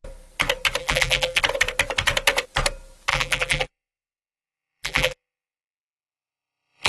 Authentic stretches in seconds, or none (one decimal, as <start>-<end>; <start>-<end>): 0.0-0.8; 1.4-3.1